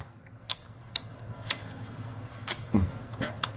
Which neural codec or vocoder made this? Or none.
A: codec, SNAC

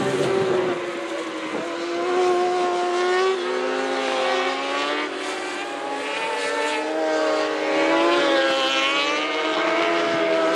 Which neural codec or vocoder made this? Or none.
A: none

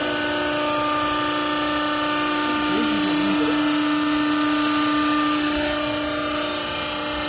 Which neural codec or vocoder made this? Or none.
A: none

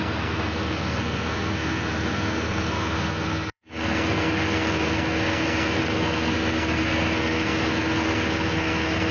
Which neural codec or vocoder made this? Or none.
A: codec, SNAC